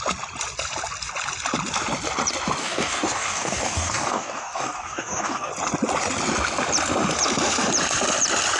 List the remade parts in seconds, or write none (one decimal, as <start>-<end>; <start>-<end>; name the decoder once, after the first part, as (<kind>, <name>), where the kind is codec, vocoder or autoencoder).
2.6-5.5 (codec, DAC)